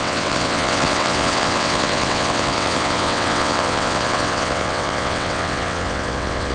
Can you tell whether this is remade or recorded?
remade